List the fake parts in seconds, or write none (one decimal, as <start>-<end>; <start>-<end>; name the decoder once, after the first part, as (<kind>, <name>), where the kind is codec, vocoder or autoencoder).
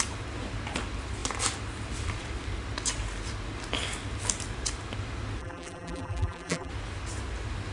5.4-6.7 (vocoder, BigVGAN v2)